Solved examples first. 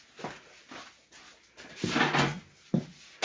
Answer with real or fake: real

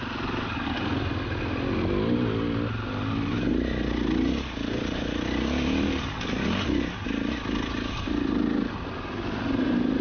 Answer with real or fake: real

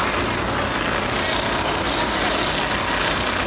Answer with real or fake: real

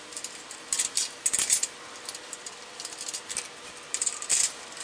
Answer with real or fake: real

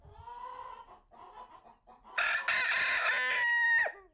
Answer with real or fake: real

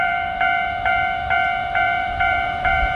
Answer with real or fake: fake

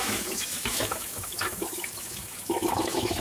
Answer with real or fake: fake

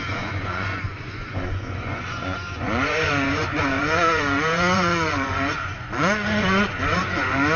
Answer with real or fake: fake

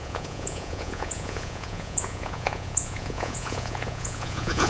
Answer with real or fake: fake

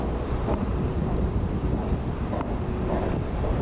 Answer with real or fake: fake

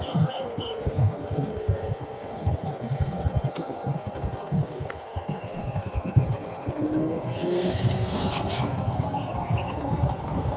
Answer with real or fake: fake